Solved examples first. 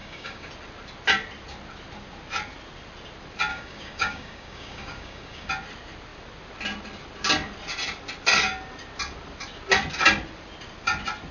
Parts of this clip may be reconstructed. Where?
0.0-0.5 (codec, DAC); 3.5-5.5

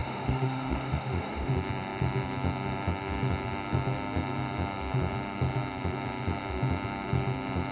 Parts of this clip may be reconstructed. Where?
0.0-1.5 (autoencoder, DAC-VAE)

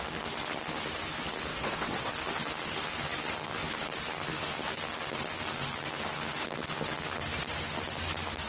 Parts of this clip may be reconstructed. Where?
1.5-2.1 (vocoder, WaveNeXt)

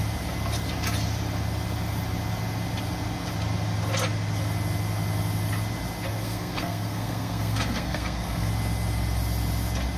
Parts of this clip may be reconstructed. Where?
6.1-8.5 (codec, SNAC)

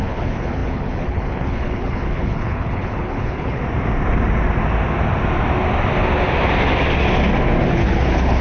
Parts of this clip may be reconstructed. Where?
0.0-3.6 (codec, HILCodec); 7.7-8.4

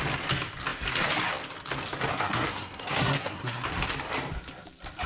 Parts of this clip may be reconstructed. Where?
2.1-3.6 (codec, SNAC)

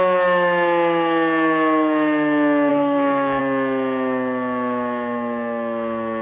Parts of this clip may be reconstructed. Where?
2.7-3.4 (codec, SNAC)